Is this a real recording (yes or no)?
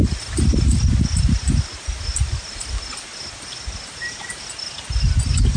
yes